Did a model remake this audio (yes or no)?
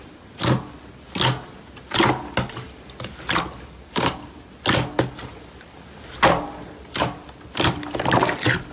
no